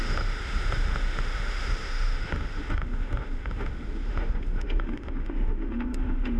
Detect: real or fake fake